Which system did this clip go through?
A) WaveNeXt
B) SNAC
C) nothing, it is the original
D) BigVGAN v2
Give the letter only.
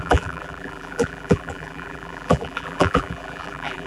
D